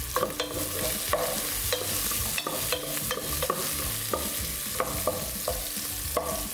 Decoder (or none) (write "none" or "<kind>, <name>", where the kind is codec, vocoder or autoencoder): none